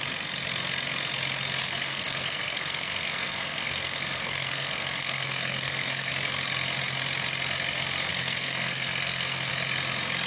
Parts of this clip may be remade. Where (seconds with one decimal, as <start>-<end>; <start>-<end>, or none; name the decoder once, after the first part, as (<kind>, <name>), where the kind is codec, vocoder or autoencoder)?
1.6-6.1 (codec, SNAC); 8.1-9.5